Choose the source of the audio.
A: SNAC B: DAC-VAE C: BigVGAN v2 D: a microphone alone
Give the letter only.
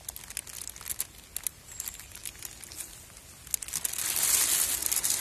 D